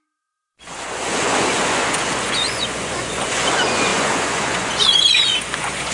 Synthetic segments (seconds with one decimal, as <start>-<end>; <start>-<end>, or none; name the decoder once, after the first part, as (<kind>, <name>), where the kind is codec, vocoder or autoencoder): 0.0-5.9 (vocoder, Vocos)